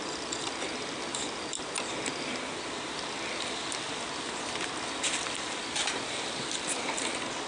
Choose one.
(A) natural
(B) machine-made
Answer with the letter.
A